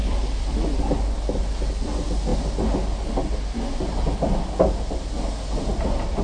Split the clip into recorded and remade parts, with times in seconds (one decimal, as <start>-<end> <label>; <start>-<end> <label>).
0.0-0.8 remade; 0.8-6.2 recorded